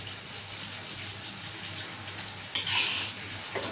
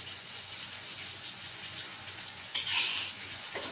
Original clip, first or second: first